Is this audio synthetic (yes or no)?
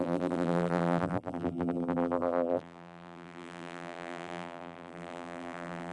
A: yes